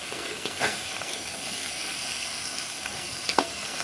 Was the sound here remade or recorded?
remade